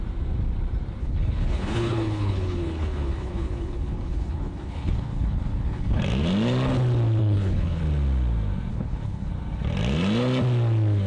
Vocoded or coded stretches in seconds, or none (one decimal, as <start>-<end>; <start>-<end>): 1.0-6.0; 7.2-7.8; 8.7-9.3